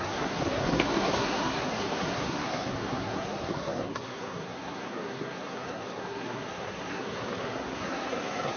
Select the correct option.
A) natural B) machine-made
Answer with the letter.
B